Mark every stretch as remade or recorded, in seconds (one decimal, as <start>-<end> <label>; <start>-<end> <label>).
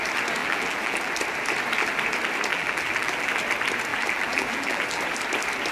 0.0-0.4 recorded; 0.4-1.1 remade; 1.1-2.5 recorded; 2.5-3.3 remade; 3.3-3.9 recorded; 3.9-5.0 remade; 5.0-5.7 recorded